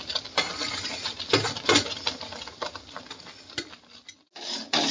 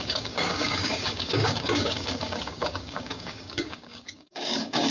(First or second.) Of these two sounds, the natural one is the first